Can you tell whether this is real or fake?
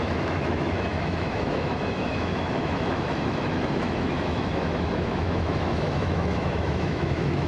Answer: fake